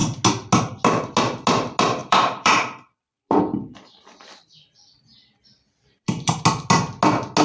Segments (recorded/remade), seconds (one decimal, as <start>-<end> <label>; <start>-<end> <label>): 0.0-2.0 recorded; 2.0-6.4 remade; 6.4-7.4 recorded